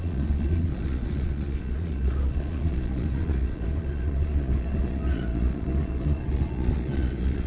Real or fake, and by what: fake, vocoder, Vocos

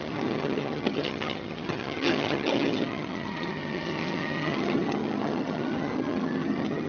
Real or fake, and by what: fake, vocoder, HiFi-GAN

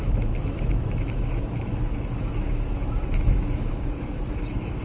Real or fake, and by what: fake, autoencoder, DAC-VAE